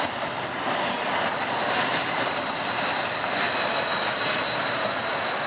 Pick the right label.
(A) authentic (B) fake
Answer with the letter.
A